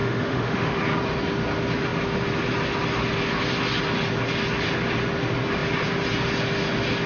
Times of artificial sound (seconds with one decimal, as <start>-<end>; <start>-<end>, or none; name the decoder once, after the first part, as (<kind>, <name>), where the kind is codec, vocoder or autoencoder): 0.0-0.8 (autoencoder, DAC-VAE)